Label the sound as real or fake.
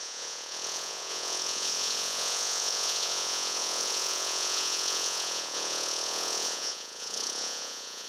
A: fake